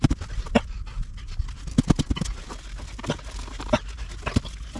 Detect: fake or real real